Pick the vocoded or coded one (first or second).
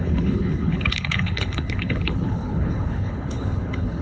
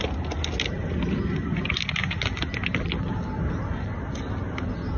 first